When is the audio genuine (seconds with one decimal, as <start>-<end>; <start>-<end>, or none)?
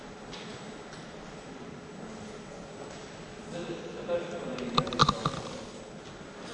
0.0-6.5